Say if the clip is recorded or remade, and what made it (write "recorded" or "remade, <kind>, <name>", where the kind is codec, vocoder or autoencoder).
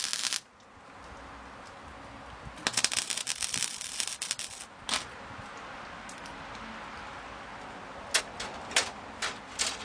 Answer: recorded